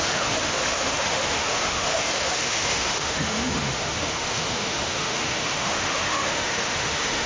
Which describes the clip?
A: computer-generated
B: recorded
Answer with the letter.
A